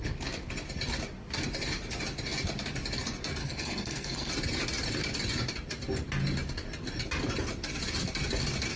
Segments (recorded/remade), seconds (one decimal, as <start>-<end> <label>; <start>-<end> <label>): 0.0-3.4 recorded; 3.4-4.3 remade; 4.3-8.8 recorded

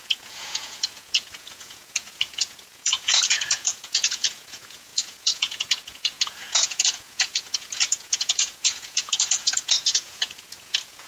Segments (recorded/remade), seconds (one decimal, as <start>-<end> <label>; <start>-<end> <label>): 0.0-11.1 remade

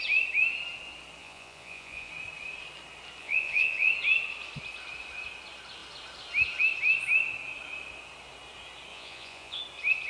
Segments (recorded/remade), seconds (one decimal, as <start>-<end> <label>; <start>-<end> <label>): 0.0-1.2 recorded; 1.2-2.1 remade; 2.1-3.2 recorded; 3.2-3.9 remade; 3.9-8.9 recorded; 8.9-9.6 remade; 9.6-10.1 recorded

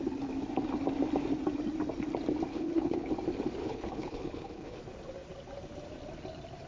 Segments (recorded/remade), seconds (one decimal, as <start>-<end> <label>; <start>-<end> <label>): 0.0-2.5 recorded; 2.5-3.1 remade; 3.1-3.6 recorded; 3.6-4.8 remade; 4.8-6.7 recorded